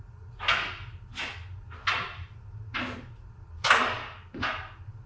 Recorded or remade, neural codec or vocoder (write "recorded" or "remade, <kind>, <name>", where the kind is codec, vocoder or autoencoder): recorded